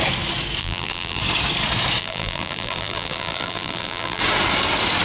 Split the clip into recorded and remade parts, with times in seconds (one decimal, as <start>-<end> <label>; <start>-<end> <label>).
0.0-0.6 recorded; 0.6-1.2 remade; 1.2-2.0 recorded; 2.0-4.2 remade; 4.2-5.0 recorded

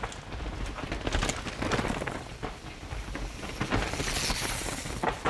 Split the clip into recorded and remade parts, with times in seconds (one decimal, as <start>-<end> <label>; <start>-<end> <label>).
0.0-1.2 remade; 1.2-1.9 recorded; 1.9-3.6 remade; 3.6-4.3 recorded; 4.3-5.3 remade

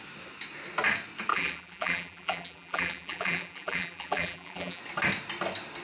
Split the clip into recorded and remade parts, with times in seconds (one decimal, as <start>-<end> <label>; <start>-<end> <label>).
0.0-1.3 recorded; 1.3-4.8 remade; 4.8-5.8 recorded

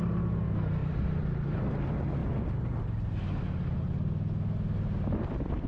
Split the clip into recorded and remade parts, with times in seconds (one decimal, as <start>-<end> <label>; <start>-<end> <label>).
0.0-0.8 recorded; 0.8-1.6 remade; 1.6-5.7 recorded

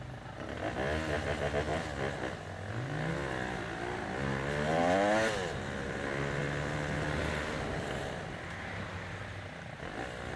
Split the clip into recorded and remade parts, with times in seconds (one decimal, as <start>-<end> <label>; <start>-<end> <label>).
0.0-10.4 recorded

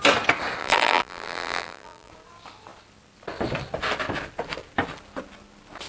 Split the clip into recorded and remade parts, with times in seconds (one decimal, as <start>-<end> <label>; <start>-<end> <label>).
0.0-0.6 recorded; 0.6-2.1 remade; 2.1-5.9 recorded